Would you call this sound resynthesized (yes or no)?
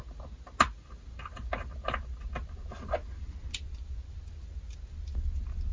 no